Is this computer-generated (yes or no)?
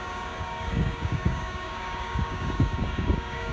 yes